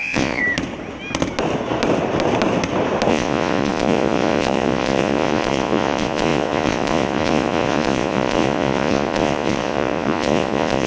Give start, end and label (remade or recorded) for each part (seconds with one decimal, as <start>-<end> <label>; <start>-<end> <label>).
0.0-0.4 remade; 0.4-3.1 recorded; 3.1-10.9 remade